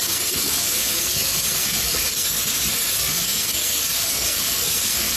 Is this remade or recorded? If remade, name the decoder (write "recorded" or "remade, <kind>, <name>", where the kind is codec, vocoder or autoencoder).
remade, codec, SNAC